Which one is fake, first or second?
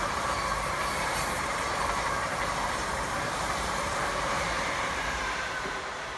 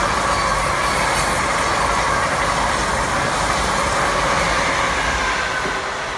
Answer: first